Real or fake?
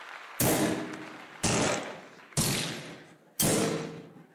real